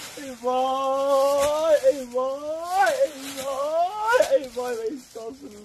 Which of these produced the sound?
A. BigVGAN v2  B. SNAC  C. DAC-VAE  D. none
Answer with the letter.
D